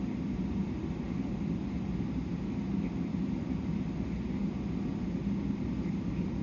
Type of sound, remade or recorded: recorded